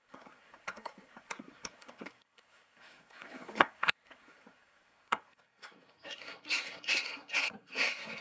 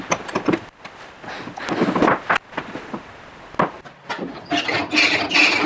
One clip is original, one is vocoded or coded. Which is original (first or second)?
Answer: second